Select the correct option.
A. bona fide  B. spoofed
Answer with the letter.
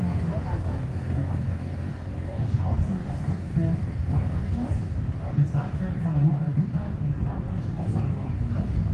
B